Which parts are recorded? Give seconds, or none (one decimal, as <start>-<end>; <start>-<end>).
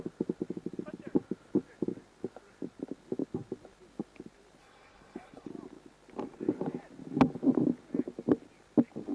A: 0.0-4.6; 5.5-9.1